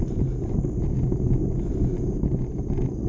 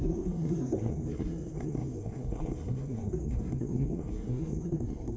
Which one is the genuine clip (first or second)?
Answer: first